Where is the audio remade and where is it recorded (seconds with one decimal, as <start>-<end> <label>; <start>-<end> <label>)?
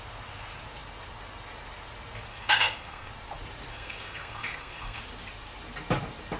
0.0-2.3 recorded; 2.3-3.1 remade; 3.1-3.7 recorded; 3.7-5.0 remade; 5.0-6.4 recorded